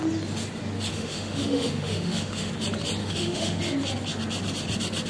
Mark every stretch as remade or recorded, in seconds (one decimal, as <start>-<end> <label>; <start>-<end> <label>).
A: 0.0-0.9 recorded; 0.9-2.5 remade; 2.5-3.0 recorded; 3.0-3.6 remade; 3.6-5.1 recorded